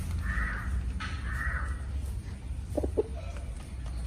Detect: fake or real real